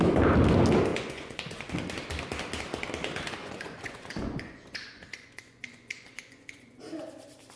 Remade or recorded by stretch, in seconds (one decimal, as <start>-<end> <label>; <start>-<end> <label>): 0.0-0.9 recorded; 0.9-1.7 remade; 1.7-3.4 recorded; 3.4-6.8 remade; 6.8-7.6 recorded